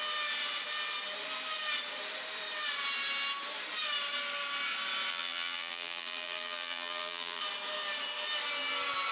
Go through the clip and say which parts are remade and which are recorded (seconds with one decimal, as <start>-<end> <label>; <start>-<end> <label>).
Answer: 0.0-5.1 recorded; 5.1-7.4 remade; 7.4-9.1 recorded